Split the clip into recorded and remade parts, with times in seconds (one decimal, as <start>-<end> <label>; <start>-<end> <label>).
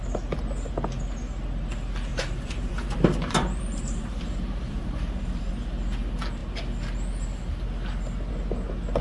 0.0-2.1 recorded; 2.1-5.5 remade; 5.5-9.0 recorded